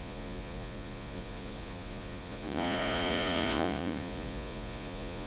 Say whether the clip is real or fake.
fake